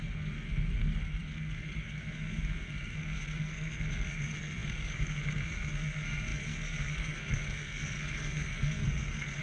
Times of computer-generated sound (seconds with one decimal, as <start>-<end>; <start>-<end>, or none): 0.0-9.4